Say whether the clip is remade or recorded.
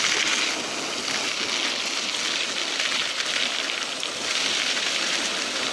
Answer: recorded